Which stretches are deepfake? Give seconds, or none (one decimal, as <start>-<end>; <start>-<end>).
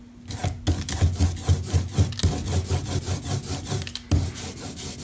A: none